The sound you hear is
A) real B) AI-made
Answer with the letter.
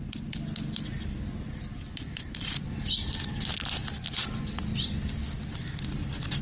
A